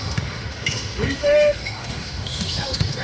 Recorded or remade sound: remade